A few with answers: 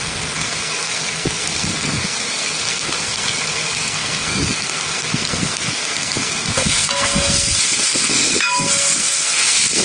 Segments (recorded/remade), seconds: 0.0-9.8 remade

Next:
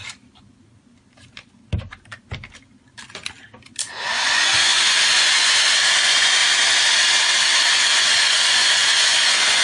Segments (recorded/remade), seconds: 0.0-3.9 recorded; 3.9-6.4 remade; 6.4-7.7 recorded; 7.7-9.6 remade

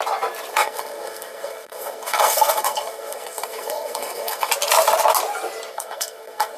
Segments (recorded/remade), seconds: 0.0-0.5 recorded; 0.5-4.5 remade; 4.5-5.7 recorded; 5.7-6.6 remade

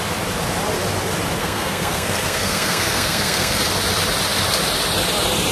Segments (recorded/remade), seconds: 0.0-1.4 recorded; 1.4-3.6 remade; 3.6-5.5 recorded

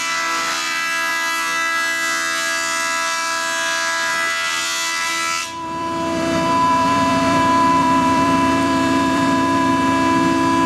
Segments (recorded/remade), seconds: 0.0-5.4 recorded; 5.4-9.7 remade; 9.7-10.7 recorded